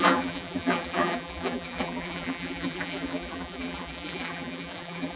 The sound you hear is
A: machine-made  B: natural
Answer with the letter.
A